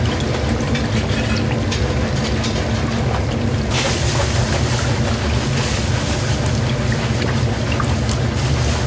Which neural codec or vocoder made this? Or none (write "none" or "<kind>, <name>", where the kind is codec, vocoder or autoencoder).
none